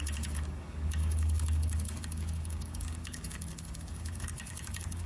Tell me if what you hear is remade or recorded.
remade